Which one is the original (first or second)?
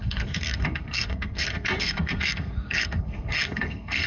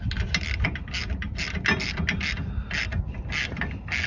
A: second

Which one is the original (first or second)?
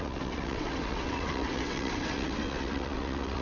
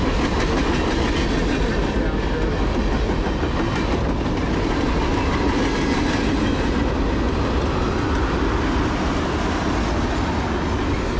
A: second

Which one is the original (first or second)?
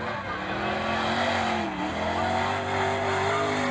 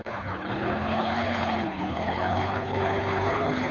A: first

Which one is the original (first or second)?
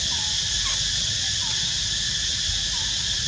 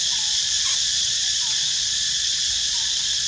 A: first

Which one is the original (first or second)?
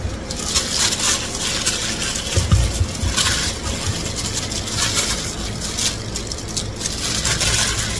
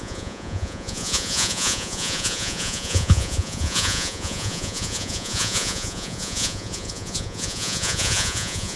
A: first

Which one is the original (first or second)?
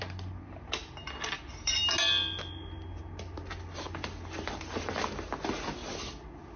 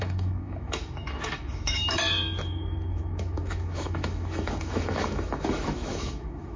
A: first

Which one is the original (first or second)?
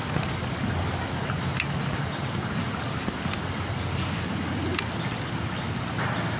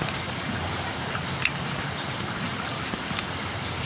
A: first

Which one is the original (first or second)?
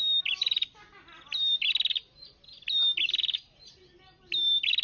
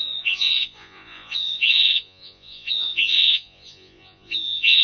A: first